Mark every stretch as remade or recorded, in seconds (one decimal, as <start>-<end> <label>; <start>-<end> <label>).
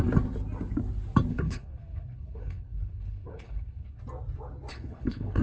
0.0-1.3 recorded; 1.3-4.0 remade; 4.0-4.7 recorded; 4.7-5.4 remade